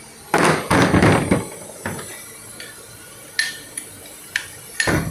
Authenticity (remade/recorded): recorded